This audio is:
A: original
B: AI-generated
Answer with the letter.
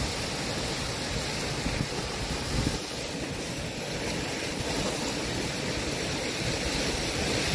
A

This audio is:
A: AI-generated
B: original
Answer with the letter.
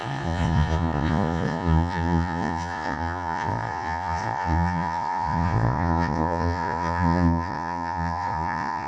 A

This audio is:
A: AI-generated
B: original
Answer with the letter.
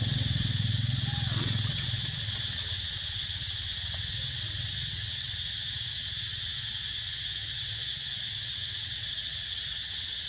A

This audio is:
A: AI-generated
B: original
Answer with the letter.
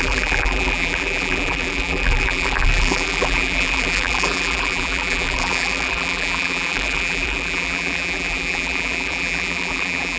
A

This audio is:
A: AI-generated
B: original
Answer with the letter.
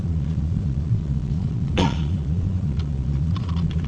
A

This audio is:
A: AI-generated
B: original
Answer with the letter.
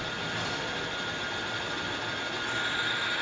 B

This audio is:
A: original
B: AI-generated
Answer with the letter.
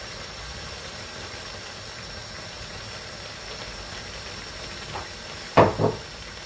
B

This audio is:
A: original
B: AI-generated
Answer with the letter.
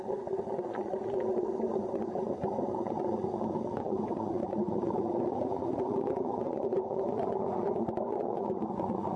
B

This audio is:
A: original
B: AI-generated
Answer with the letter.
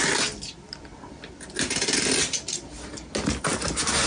A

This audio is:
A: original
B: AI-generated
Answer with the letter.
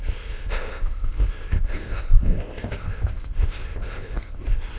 B